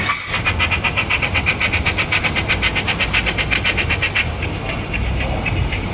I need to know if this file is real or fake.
real